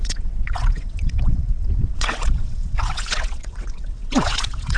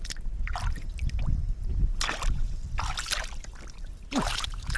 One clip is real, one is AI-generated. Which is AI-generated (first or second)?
first